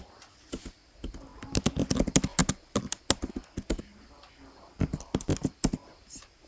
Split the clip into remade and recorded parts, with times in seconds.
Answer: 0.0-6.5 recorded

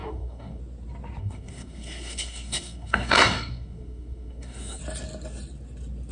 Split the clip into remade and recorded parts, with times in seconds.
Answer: 0.0-0.6 remade; 0.6-1.2 recorded; 1.2-4.8 remade; 4.8-6.1 recorded

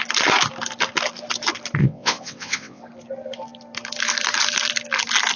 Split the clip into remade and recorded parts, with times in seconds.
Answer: 0.0-1.8 recorded; 1.8-2.8 remade; 2.8-5.4 recorded

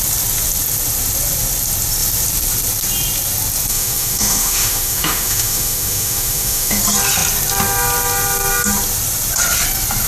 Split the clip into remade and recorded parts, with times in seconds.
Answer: 0.0-3.7 recorded; 3.7-6.8 remade; 6.8-10.1 recorded

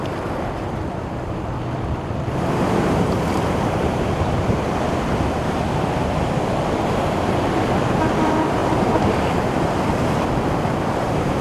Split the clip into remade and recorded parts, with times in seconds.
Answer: 0.0-8.6 remade; 8.6-11.0 recorded; 11.0-11.4 remade

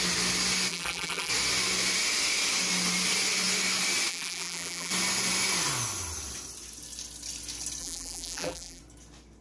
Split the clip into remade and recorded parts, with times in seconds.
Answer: 0.0-0.7 recorded; 0.7-1.3 remade; 1.3-4.1 recorded; 4.1-4.9 remade; 4.9-7.8 recorded; 7.8-8.8 remade; 8.8-9.4 recorded

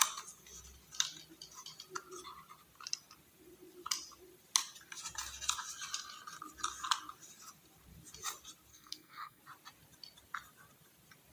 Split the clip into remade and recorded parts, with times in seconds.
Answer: 0.0-8.7 recorded; 8.7-9.4 remade; 9.4-11.3 recorded